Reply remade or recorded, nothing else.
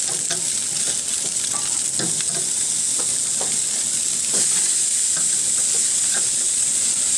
recorded